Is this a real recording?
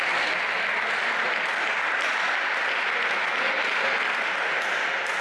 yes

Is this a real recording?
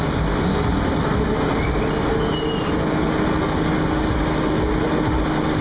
yes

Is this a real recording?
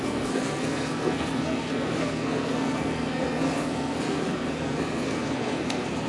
no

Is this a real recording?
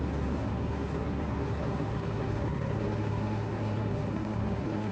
no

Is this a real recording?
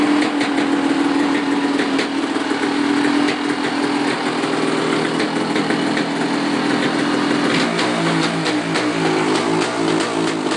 yes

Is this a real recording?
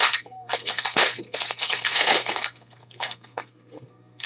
no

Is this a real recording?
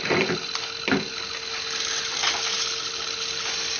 yes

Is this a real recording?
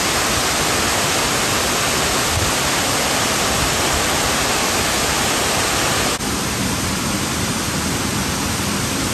yes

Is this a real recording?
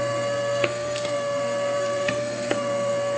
no